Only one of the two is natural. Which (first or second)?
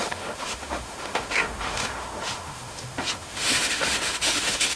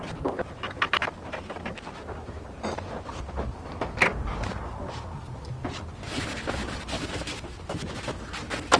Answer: second